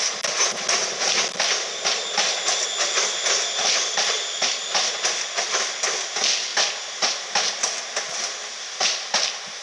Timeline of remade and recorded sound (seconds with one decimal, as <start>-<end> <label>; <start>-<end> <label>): 0.0-3.6 recorded; 3.6-4.4 remade; 4.4-9.6 recorded